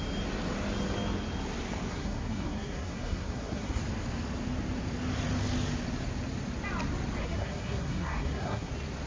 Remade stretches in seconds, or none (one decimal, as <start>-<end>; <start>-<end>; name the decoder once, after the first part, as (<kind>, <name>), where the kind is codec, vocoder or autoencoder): 1.9-3.8 (codec, SNAC); 7.2-8.7